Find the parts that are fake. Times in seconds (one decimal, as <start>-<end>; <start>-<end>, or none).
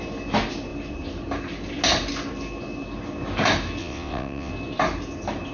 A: 3.8-4.5